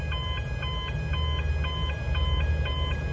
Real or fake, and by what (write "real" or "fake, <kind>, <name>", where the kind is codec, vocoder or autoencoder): real